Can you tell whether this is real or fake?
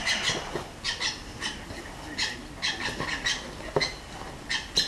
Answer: real